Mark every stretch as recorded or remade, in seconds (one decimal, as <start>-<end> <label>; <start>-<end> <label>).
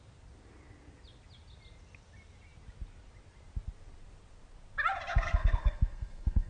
0.0-5.1 recorded; 5.1-6.5 remade